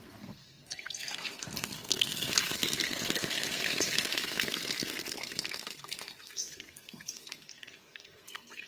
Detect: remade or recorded remade